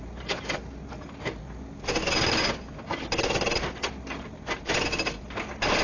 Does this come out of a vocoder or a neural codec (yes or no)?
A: no